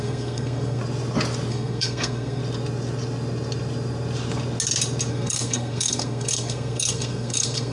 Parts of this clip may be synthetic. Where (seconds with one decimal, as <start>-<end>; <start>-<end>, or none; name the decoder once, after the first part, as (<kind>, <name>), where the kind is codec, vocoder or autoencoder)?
0.0-0.8 (codec, SNAC); 1.5-2.4; 5.1-7.7